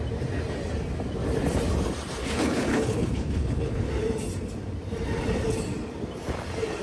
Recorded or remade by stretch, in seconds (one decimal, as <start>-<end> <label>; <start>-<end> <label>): 0.0-2.2 recorded; 2.2-3.9 remade; 3.9-6.8 recorded